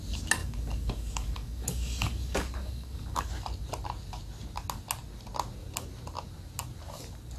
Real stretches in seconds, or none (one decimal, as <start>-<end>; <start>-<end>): 0.0-0.4; 3.3-7.4